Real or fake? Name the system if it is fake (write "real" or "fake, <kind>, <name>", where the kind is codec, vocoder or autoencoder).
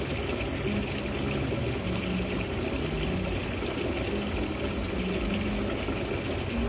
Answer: real